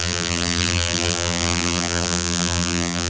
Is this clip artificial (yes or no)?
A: yes